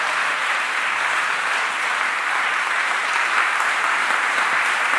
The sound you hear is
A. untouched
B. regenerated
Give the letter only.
B